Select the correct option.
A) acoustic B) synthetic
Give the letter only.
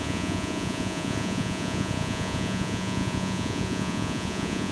B